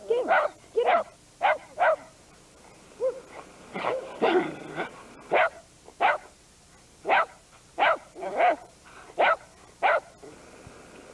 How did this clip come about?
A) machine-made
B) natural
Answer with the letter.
B